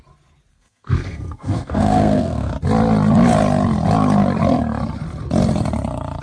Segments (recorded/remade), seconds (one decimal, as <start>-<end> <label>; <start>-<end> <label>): 0.0-0.5 recorded; 0.5-2.5 remade; 2.5-6.2 recorded